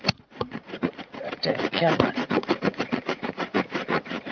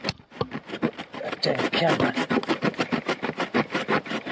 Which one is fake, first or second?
first